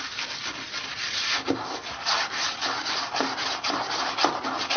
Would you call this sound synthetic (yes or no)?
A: no